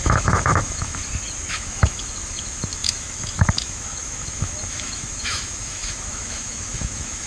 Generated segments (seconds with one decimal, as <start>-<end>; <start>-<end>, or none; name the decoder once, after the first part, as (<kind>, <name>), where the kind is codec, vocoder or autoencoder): 0.0-1.0 (autoencoder, DAC-VAE); 1.5-7.3